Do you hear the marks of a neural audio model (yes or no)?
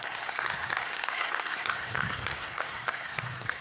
yes